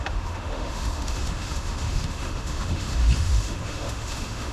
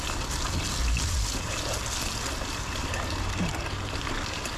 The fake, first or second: first